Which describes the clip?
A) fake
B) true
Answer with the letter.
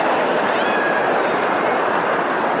A